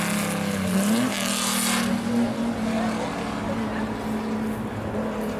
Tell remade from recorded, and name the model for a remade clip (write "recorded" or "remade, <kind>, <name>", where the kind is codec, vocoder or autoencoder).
recorded